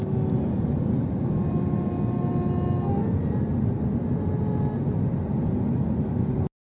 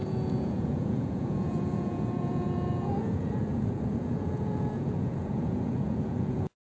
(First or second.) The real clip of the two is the first